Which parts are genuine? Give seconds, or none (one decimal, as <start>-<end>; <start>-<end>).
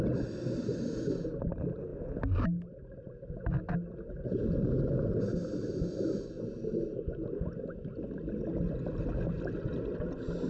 0.0-10.5